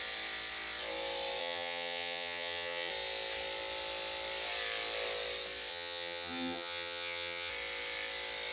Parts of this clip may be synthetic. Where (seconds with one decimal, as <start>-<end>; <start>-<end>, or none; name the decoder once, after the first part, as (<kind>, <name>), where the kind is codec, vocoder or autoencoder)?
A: 1.4-2.9 (vocoder, HiFi-GAN); 5.7-7.5